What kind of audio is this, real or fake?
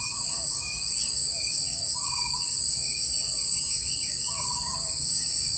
fake